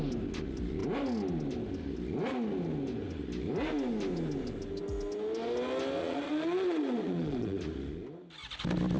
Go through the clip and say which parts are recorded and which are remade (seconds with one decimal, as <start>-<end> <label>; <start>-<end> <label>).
0.0-6.0 recorded; 6.0-7.6 remade; 7.6-9.0 recorded